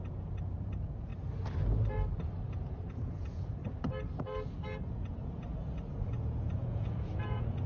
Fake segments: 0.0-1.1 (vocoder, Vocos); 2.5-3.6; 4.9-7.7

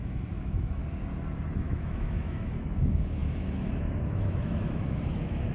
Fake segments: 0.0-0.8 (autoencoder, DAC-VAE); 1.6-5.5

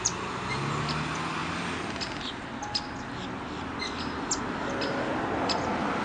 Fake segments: none

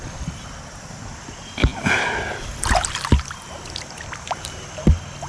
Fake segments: none

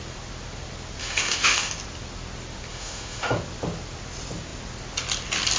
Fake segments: 1.0-1.7 (autoencoder, DAC-VAE); 2.7-3.3

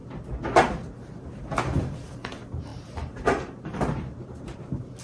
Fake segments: 0.7-5.0 (vocoder, BigVGAN v2)

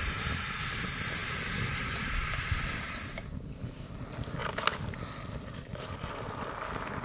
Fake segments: none

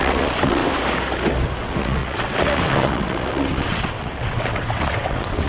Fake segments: 0.0-0.6 (vocoder, WaveNeXt); 1.6-5.5